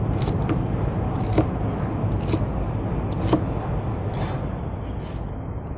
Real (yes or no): yes